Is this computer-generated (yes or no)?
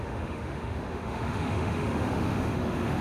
yes